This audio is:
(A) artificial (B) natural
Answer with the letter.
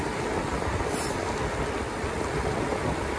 B